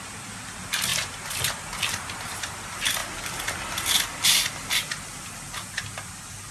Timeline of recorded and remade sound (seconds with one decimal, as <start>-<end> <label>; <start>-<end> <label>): 0.0-6.5 recorded